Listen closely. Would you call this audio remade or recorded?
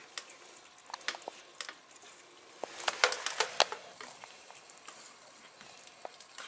recorded